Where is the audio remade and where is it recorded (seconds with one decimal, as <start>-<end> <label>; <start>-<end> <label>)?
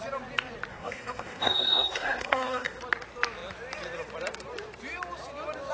0.0-0.7 recorded; 0.7-2.8 remade; 2.8-5.7 recorded